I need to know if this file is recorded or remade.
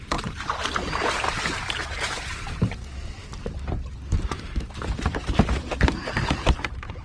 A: remade